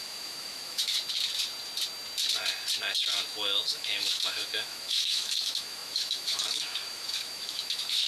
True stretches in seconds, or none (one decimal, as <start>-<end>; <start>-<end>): 0.9-3.7